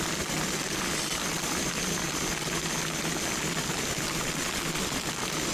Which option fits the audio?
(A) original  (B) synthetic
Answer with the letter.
A